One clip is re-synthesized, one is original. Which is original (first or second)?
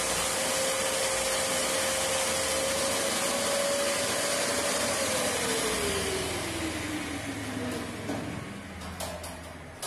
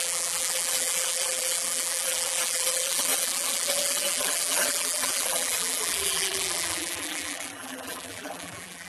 first